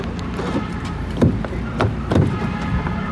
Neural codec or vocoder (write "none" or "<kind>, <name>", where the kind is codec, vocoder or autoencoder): vocoder, BigVGAN v2